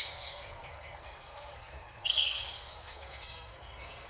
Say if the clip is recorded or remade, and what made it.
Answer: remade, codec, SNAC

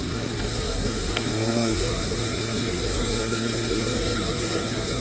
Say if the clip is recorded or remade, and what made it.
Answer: remade, codec, SNAC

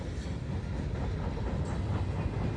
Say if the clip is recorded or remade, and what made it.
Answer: recorded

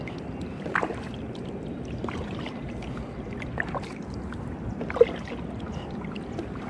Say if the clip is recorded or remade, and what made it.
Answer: recorded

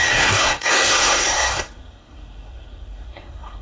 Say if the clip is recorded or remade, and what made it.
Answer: remade, codec, SNAC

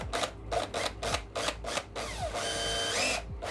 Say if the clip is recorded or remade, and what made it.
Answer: recorded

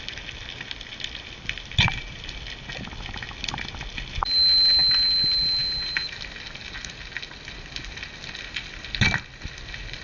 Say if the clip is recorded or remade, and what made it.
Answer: recorded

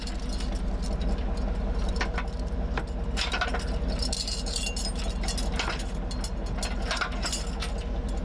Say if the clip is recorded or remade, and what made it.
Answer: recorded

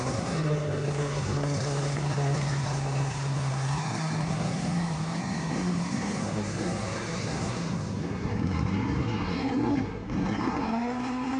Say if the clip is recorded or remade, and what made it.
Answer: remade, codec, SNAC